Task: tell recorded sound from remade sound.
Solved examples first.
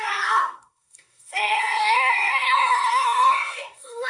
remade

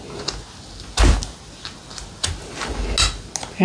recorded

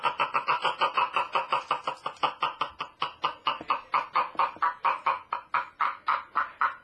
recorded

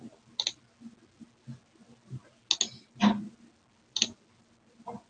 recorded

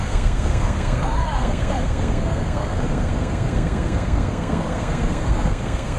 remade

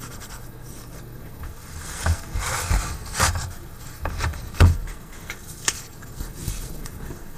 remade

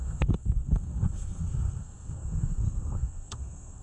remade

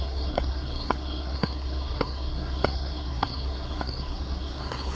remade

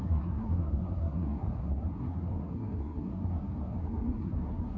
remade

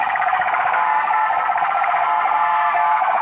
remade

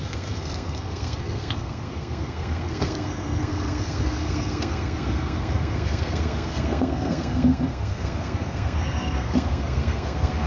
remade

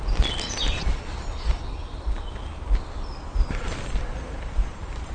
recorded